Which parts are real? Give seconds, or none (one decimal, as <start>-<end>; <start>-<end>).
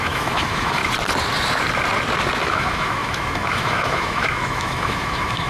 0.8-2.4